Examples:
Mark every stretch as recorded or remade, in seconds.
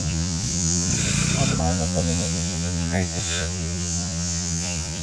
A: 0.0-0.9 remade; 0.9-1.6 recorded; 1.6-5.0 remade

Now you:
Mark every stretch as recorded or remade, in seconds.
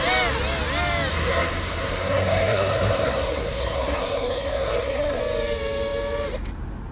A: 0.0-1.1 recorded; 1.1-5.2 remade; 5.2-6.9 recorded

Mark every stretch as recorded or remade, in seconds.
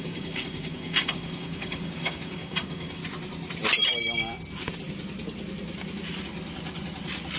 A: 0.0-3.0 remade; 3.0-7.4 recorded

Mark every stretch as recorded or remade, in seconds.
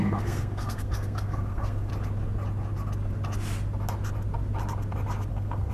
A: 0.0-1.9 remade; 1.9-5.3 recorded; 5.3-5.7 remade